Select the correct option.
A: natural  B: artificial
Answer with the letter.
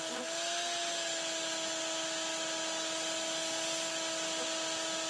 A